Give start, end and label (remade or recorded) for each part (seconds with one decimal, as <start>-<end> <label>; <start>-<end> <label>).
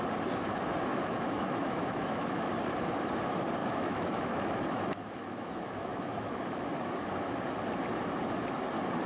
0.0-0.9 recorded; 0.9-2.5 remade; 2.5-3.6 recorded; 3.6-7.4 remade; 7.4-9.1 recorded